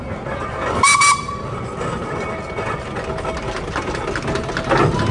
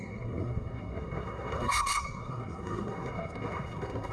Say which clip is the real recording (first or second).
first